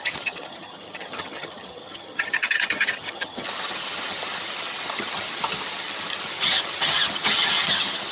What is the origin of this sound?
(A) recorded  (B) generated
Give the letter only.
B